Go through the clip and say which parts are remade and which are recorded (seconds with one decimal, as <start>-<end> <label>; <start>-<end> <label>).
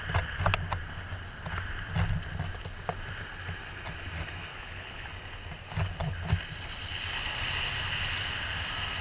0.0-4.5 recorded; 4.5-5.1 remade; 5.1-9.0 recorded